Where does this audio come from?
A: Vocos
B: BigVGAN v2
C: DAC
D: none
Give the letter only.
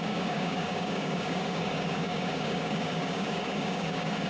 C